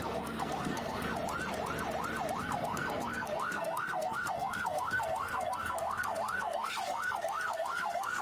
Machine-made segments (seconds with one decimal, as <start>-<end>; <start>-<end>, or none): 0.0-1.1; 2.4-8.2